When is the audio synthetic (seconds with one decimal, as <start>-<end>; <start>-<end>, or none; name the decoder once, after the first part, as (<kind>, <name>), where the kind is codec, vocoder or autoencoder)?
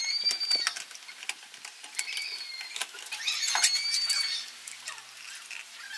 0.0-0.6 (vocoder, BigVGAN v2)